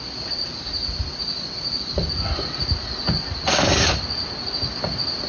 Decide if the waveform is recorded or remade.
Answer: recorded